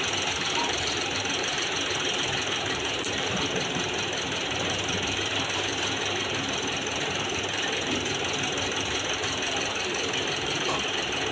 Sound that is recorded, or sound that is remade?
remade